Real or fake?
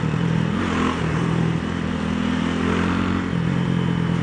real